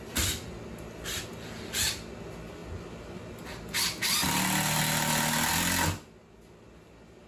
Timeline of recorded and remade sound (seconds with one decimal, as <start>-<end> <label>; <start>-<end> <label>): 0.0-7.3 recorded